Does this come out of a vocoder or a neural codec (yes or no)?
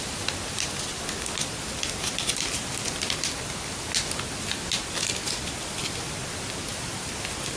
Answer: no